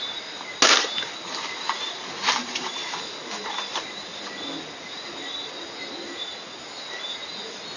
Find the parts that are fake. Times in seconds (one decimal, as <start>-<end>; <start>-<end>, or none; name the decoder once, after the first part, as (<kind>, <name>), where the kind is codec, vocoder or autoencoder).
2.4-3.0 (vocoder, BigVGAN v2)